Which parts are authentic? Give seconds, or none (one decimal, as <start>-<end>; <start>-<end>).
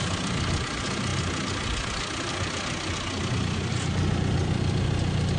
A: 0.0-5.4